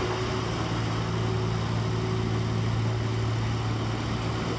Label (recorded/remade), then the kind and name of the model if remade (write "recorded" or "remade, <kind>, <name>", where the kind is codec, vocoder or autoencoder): recorded